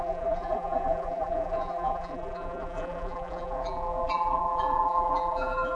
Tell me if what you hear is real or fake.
fake